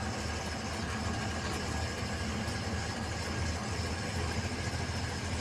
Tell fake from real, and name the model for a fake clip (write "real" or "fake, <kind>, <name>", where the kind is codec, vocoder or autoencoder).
real